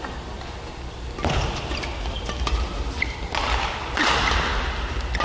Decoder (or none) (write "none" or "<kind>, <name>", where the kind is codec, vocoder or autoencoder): none